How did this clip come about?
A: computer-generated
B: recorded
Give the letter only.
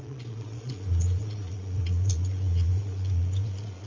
A